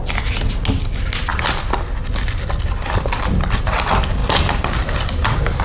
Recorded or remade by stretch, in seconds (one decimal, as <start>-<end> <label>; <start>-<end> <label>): 0.0-1.3 recorded; 1.3-3.8 remade; 3.8-4.2 recorded; 4.2-5.6 remade